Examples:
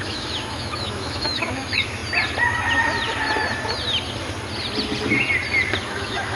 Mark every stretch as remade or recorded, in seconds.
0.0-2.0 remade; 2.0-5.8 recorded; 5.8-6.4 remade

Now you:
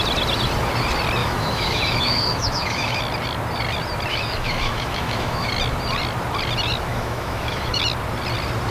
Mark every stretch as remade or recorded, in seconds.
0.0-1.2 recorded; 1.2-3.0 remade; 3.0-4.1 recorded; 4.1-5.5 remade; 5.5-6.9 recorded; 6.9-7.8 remade; 7.8-8.7 recorded

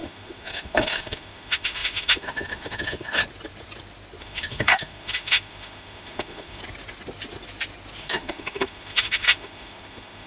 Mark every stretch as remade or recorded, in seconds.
0.0-3.2 remade; 3.2-4.2 recorded; 4.2-6.6 remade; 6.6-8.0 recorded; 8.0-10.3 remade

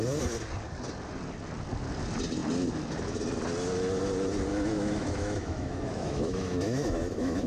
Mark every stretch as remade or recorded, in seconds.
0.0-4.5 recorded; 4.5-7.5 remade

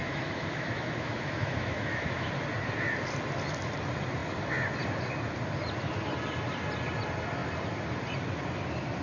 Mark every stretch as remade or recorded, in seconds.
0.0-2.3 remade; 2.3-9.0 recorded

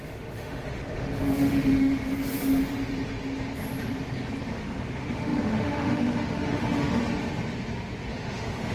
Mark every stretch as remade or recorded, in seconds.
0.0-2.1 remade; 2.1-4.5 recorded; 4.5-7.0 remade; 7.0-8.1 recorded; 8.1-8.7 remade

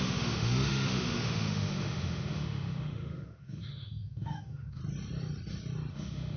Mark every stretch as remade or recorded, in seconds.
0.0-4.8 remade; 4.8-5.9 recorded; 5.9-6.4 remade